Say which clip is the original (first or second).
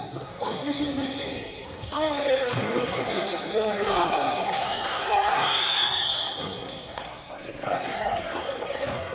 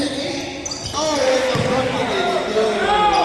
second